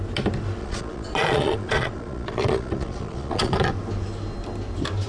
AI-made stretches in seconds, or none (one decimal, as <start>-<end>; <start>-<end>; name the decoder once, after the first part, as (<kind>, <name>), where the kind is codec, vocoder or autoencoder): 0.6-3.7 (vocoder, Vocos)